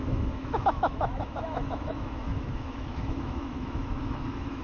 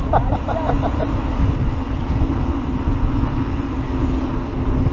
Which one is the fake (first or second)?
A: first